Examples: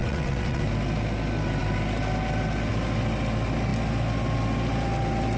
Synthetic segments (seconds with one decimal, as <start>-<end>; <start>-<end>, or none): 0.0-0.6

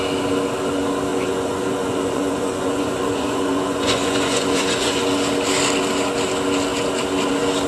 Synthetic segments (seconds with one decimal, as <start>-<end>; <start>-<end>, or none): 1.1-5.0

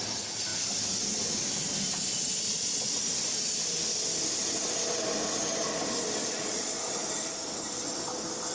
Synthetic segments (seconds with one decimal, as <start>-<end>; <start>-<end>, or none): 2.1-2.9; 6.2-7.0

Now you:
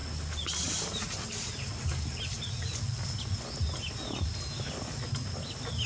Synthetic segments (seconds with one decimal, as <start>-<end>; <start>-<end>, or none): 0.0-3.2

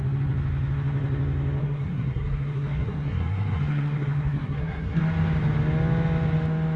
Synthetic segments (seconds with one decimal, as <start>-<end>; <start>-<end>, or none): 1.6-5.0